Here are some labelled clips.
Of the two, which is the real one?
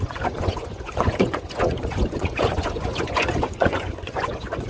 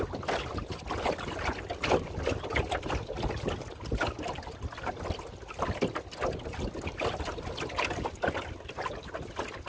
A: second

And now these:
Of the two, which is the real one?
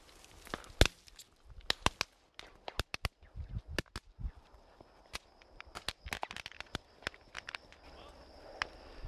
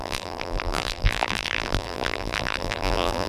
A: first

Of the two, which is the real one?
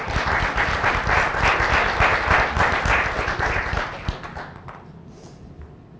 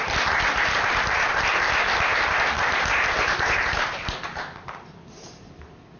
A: first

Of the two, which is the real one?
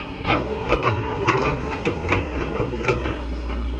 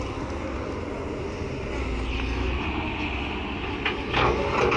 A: second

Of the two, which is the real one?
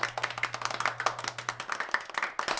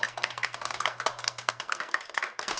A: first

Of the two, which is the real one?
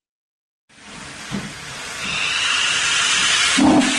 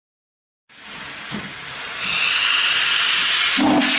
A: second